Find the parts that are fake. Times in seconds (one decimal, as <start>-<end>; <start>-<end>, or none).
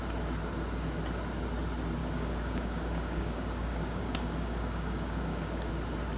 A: 2.0-5.7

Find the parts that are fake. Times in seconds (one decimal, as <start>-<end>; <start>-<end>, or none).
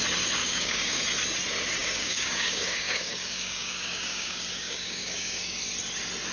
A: 0.4-1.0; 1.8-5.6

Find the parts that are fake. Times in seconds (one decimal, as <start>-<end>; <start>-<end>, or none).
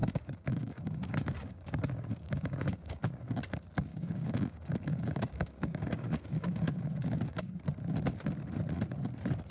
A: 0.0-3.3; 3.9-7.6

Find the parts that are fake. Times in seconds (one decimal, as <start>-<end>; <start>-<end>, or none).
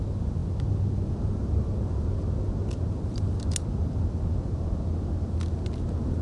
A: none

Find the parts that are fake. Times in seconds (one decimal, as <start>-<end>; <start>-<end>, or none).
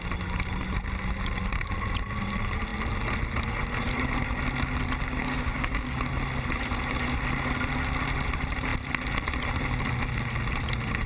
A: 5.2-6.0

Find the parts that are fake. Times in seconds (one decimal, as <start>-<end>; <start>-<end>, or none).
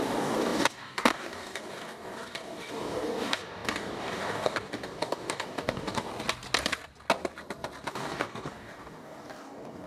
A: 0.0-6.1; 7.9-9.9